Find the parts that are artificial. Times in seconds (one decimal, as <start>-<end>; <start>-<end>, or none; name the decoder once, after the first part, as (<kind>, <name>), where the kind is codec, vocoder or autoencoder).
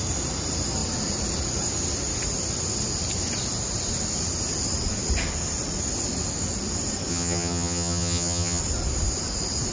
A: 7.1-8.6 (vocoder, HiFi-GAN)